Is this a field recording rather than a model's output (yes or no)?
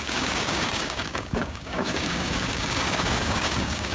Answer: no